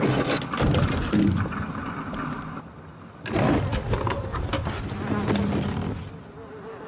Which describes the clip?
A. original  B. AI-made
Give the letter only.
A